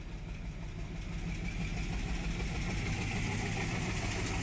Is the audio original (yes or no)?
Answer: yes